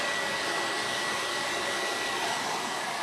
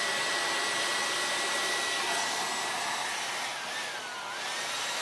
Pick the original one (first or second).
second